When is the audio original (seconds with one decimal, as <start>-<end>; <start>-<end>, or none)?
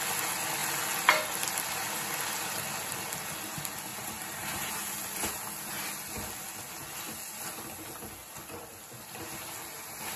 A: 0.0-3.9; 5.3-10.2